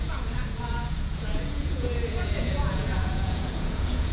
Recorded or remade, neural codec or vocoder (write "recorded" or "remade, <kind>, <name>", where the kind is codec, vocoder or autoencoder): remade, vocoder, Vocos